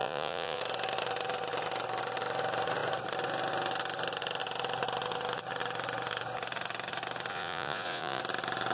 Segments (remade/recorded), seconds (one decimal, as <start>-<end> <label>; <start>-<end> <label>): 0.0-0.6 remade; 0.6-7.3 recorded; 7.3-8.2 remade; 8.2-8.7 recorded